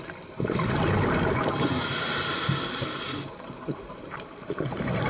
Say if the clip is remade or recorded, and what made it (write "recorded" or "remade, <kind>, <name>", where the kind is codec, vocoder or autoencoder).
recorded